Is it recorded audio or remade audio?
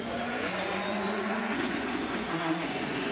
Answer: remade